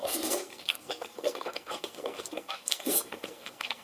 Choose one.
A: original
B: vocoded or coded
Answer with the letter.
B